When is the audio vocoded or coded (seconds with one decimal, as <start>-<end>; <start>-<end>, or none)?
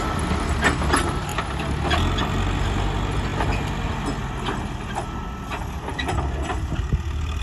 none